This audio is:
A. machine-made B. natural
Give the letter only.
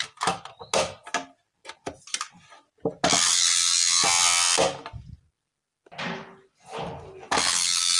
B